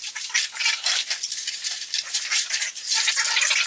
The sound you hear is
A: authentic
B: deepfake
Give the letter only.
A